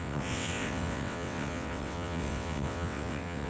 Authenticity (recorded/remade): remade